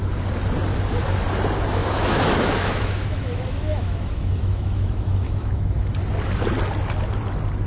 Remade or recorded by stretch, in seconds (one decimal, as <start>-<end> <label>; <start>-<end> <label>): 0.0-1.8 recorded; 1.8-5.9 remade; 5.9-7.7 recorded